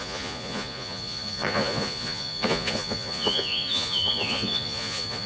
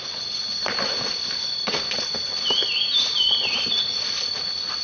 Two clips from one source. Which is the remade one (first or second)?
first